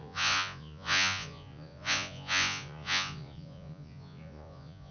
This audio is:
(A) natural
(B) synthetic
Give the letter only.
B